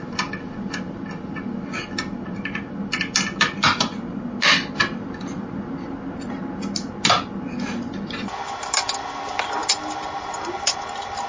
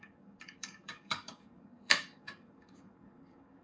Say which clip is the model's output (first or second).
second